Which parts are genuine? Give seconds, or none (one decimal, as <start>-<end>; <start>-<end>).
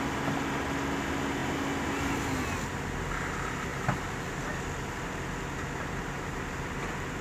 0.0-7.2